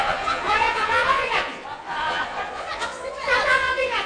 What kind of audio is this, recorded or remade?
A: remade